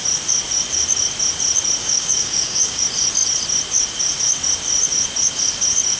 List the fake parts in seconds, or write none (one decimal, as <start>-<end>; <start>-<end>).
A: 1.8-2.8